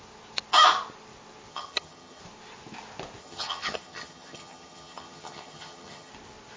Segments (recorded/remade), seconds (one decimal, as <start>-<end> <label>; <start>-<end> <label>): 0.0-1.5 recorded; 1.5-2.2 remade; 2.2-3.2 recorded; 3.2-6.1 remade; 6.1-6.6 recorded